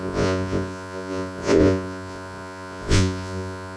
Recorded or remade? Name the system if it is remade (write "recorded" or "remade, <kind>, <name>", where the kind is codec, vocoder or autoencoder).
remade, vocoder, Vocos